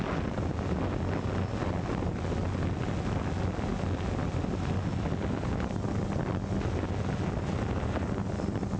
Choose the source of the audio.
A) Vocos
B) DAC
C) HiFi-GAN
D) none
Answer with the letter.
D